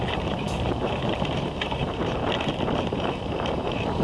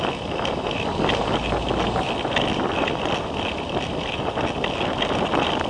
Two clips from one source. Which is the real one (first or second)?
second